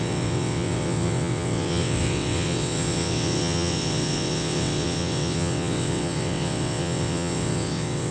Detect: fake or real fake